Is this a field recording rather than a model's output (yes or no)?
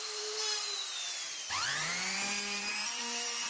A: no